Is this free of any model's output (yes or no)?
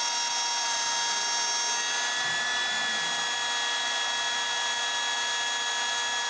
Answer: yes